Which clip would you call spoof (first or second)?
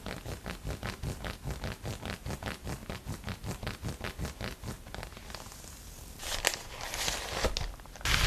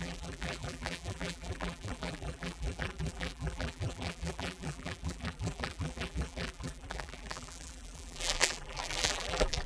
second